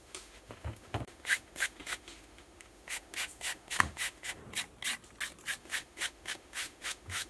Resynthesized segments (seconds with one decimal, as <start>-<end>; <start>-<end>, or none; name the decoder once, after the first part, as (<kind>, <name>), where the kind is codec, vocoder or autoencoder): 0.0-4.4 (autoencoder, DAC-VAE); 5.6-7.3